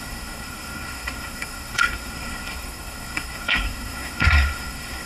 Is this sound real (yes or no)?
no